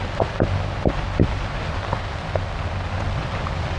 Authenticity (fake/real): fake